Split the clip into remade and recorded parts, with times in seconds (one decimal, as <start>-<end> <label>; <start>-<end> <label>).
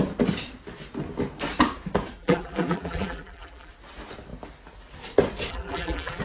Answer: 0.0-2.2 recorded; 2.2-3.7 remade; 3.7-5.5 recorded; 5.5-6.2 remade